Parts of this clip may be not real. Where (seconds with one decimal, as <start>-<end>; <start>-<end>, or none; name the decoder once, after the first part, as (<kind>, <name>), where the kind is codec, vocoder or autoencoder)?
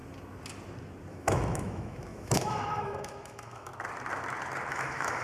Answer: 1.1-3.7 (autoencoder, DAC-VAE); 4.7-5.2